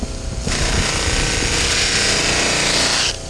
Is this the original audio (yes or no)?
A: yes